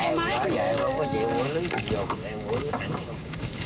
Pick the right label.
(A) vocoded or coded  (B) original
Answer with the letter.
A